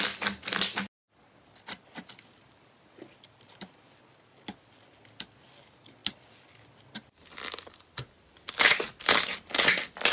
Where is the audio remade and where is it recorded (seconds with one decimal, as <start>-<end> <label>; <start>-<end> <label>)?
0.0-10.1 recorded